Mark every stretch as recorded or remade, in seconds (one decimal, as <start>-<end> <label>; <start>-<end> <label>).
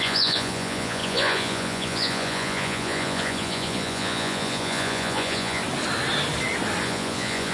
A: 0.0-5.6 remade; 5.6-6.8 recorded; 6.8-7.5 remade